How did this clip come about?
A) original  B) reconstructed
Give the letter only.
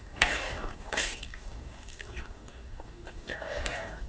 B